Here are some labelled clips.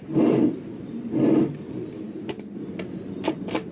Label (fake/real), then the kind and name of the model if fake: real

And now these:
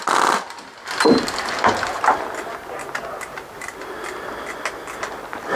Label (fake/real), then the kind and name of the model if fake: real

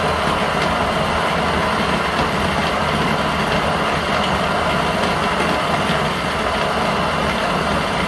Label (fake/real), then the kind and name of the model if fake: real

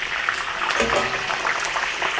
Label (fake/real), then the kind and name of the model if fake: real